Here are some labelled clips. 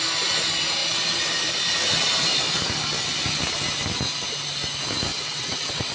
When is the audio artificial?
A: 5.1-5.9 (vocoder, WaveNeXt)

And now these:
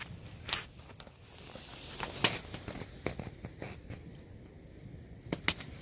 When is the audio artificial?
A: none

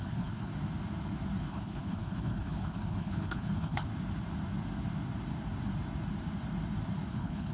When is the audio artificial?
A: 0.0-0.5 (codec, HILCodec); 1.4-3.9; 7.1-7.5

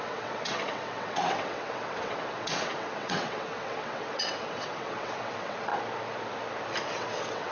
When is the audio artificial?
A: 0.0-5.7 (vocoder, WaveNeXt); 6.9-7.5

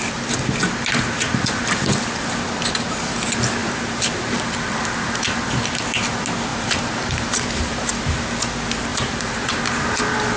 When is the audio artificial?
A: 3.6-5.4 (vocoder, BigVGAN v2); 6.5-7.9; 8.9-9.4